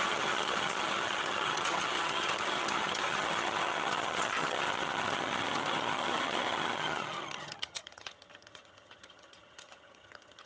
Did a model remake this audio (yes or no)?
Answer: yes